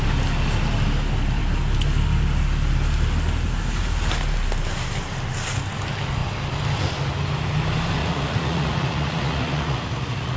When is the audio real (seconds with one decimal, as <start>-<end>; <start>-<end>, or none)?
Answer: 0.0-8.0